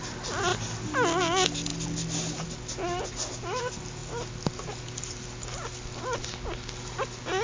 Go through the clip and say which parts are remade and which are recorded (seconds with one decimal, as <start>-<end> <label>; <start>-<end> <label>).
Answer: 0.0-7.4 recorded